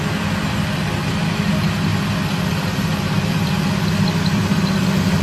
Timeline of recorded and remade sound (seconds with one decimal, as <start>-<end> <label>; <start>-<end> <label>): 0.0-5.2 recorded